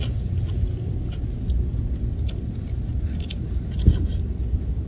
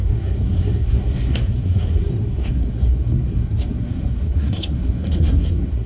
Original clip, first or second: first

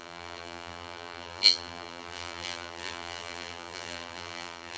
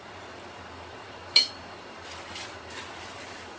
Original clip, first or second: second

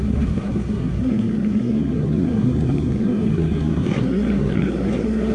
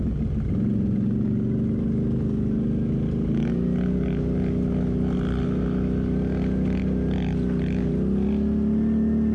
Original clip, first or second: second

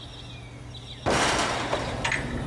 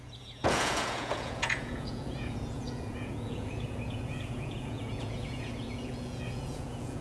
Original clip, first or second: first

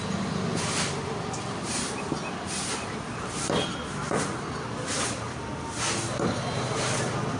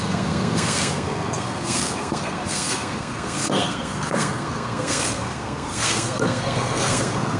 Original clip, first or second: first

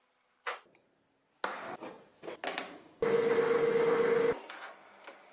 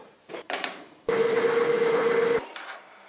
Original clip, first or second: first